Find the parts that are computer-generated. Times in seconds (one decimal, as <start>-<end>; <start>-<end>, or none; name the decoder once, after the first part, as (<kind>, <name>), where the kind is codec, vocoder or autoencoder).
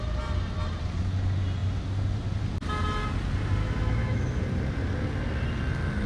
3.6-4.4 (autoencoder, DAC-VAE)